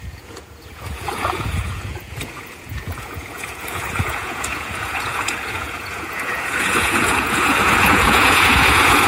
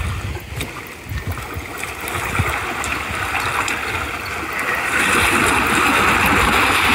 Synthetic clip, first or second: first